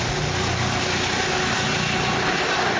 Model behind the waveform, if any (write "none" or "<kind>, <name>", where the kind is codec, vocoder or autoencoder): none